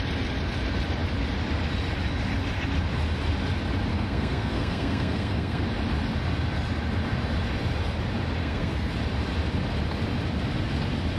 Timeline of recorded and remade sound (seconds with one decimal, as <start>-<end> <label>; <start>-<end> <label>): 0.0-3.9 recorded; 3.9-5.6 remade; 5.6-8.4 recorded; 8.4-8.9 remade; 8.9-11.2 recorded